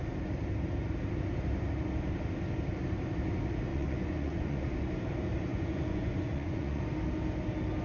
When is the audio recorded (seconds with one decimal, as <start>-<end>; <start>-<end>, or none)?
0.0-3.7; 4.6-5.5; 6.8-7.8